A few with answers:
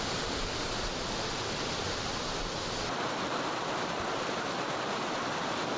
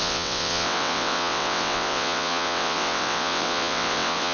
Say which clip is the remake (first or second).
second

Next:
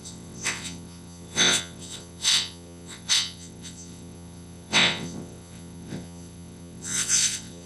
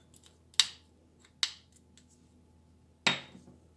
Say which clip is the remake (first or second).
first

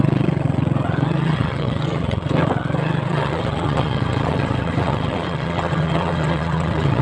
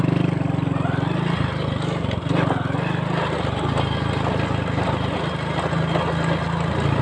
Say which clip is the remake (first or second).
first